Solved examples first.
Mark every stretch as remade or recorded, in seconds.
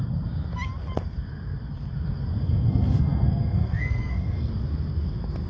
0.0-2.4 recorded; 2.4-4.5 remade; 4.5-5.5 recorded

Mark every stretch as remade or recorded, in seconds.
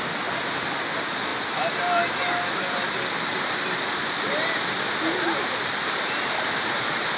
0.0-7.2 recorded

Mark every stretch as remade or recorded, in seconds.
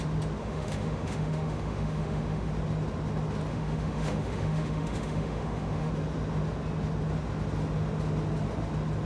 0.0-0.4 recorded; 0.4-2.5 remade; 2.5-3.5 recorded; 3.5-5.9 remade; 5.9-9.1 recorded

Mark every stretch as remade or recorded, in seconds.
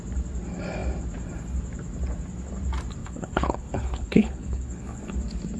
0.0-3.0 recorded; 3.0-5.0 remade; 5.0-5.6 recorded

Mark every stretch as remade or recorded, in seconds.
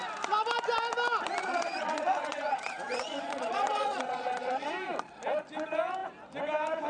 0.0-1.4 recorded; 1.4-4.7 remade; 4.7-6.9 recorded